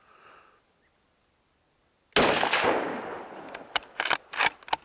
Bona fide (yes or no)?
yes